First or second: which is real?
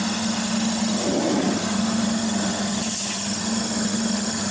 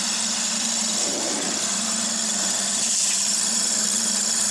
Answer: first